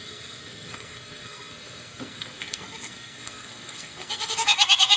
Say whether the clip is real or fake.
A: fake